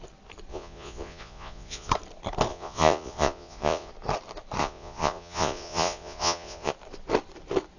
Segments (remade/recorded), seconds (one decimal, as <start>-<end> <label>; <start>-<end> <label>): 0.0-0.5 recorded; 0.5-1.9 remade; 1.9-2.5 recorded; 2.5-3.9 remade; 3.9-4.6 recorded; 4.6-6.7 remade; 6.7-7.8 recorded